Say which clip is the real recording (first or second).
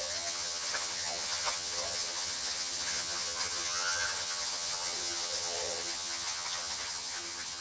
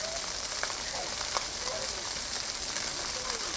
second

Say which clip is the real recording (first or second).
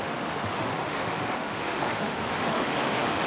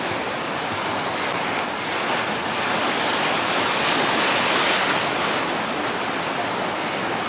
second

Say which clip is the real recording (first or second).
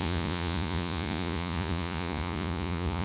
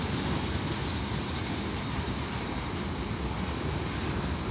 second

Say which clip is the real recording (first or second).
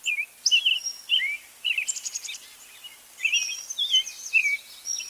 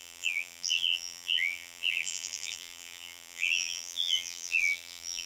first